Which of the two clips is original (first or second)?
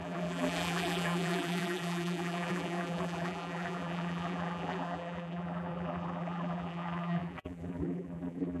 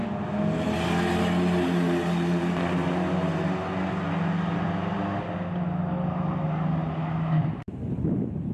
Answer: second